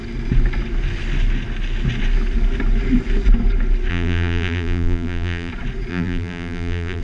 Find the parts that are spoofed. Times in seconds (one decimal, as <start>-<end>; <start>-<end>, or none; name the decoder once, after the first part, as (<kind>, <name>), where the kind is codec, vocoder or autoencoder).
3.9-5.5 (vocoder, BigVGAN v2); 5.9-7.0